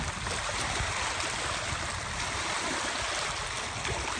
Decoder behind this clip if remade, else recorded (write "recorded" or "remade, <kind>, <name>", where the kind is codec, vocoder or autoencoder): recorded